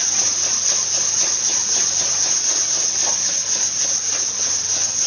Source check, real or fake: real